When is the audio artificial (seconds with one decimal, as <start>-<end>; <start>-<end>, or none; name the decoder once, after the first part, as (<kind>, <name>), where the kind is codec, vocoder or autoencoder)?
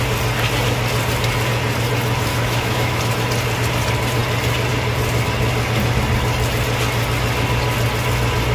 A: 2.3-3.0 (autoencoder, DAC-VAE)